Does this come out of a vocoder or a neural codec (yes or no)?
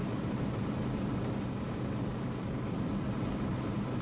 yes